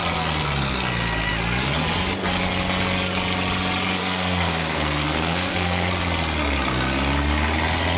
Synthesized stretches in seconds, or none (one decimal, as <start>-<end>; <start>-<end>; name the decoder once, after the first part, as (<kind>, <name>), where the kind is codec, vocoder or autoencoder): 4.0-5.9 (codec, SNAC)